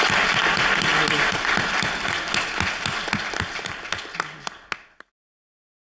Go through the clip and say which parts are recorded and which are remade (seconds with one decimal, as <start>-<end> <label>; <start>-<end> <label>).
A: 0.0-6.0 recorded